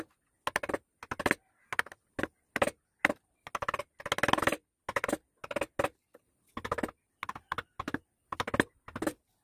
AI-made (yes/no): no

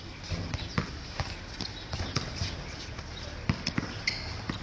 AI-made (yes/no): no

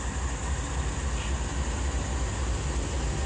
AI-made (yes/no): no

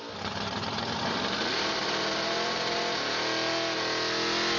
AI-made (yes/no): no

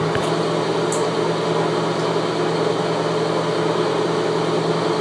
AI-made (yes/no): no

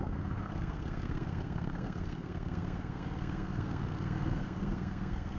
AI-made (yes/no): yes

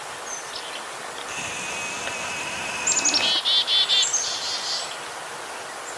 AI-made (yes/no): no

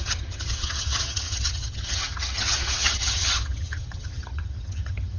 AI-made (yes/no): yes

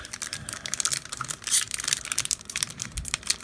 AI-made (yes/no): yes